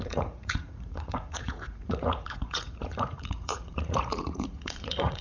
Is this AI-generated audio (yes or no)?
yes